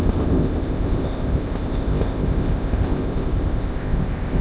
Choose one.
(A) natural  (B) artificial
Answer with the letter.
B